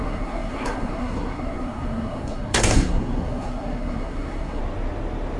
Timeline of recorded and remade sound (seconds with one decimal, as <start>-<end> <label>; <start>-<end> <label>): 0.0-4.6 remade; 4.6-5.4 recorded